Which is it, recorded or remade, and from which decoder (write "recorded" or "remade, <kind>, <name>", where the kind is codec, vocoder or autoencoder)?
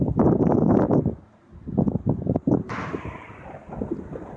recorded